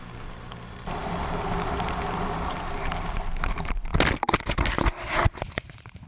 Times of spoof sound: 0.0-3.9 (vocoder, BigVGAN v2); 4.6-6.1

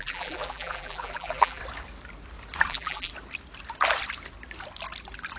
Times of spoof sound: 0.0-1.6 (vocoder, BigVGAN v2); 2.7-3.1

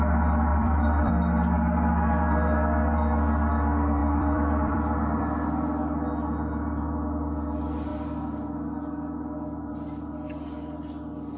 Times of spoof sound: 0.5-1.1 (vocoder, BigVGAN v2); 4.0-5.2

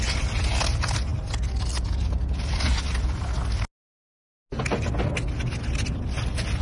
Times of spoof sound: none

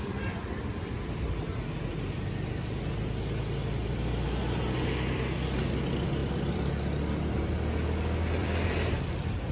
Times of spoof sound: 3.8-4.4 (vocoder, BigVGAN v2); 6.2-6.7; 8.4-9.1